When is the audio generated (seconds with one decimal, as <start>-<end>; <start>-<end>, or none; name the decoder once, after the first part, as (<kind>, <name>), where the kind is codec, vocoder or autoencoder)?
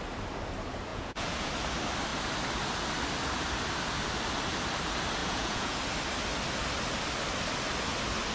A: 0.9-1.5 (vocoder, Vocos); 5.2-5.8